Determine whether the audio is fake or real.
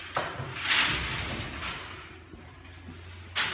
real